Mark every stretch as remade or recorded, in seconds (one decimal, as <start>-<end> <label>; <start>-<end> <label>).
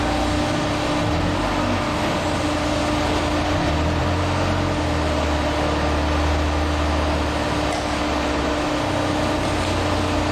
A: 0.0-10.3 recorded